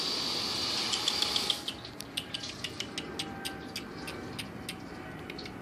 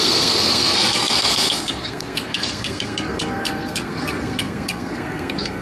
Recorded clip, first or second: first